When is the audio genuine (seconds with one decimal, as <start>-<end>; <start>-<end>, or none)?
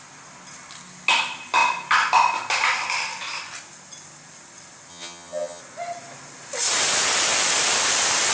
0.0-4.9; 5.6-8.3